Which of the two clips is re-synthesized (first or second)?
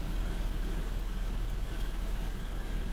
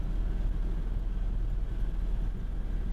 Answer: first